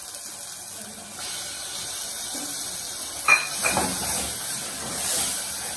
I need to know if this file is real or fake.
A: real